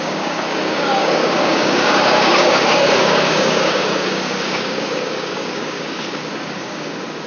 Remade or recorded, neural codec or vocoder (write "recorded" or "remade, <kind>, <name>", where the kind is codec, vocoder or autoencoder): remade, codec, DAC